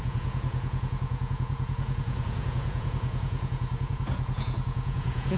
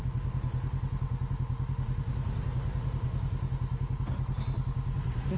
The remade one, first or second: first